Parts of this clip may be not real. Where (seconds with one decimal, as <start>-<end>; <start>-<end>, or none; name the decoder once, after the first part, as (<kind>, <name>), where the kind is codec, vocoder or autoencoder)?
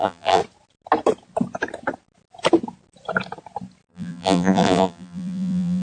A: 0.0-0.4 (vocoder, BigVGAN v2); 3.9-5.8